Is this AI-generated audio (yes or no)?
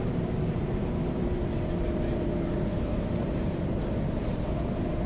yes